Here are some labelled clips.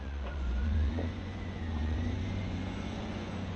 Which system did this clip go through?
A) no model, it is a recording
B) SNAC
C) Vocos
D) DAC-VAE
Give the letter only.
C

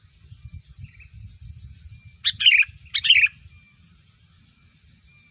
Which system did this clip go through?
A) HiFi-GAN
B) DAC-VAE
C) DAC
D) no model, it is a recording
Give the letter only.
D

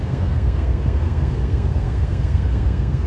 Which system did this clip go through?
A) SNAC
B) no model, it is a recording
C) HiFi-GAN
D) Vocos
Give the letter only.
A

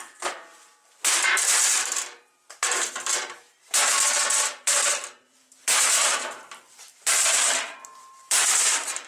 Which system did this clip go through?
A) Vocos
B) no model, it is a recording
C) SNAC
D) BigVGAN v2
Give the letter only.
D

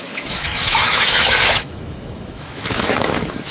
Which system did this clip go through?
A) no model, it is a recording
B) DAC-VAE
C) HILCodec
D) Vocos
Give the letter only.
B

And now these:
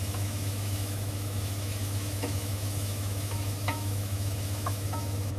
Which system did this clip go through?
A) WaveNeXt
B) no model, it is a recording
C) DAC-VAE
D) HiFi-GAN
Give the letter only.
C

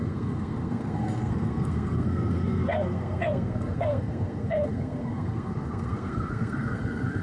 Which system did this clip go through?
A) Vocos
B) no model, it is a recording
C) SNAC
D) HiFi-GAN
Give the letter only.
C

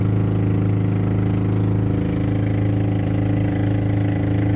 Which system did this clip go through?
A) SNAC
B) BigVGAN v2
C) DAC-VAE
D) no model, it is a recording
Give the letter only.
D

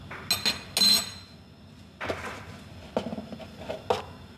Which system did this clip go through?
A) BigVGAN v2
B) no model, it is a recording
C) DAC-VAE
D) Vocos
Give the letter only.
B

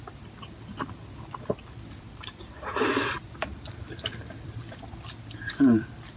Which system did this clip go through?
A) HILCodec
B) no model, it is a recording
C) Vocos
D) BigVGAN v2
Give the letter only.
D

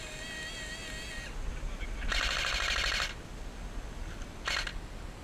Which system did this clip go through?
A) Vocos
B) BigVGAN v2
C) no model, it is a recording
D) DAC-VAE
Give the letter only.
C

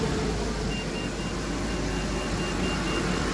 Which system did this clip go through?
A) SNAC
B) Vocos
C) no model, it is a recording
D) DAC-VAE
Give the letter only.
C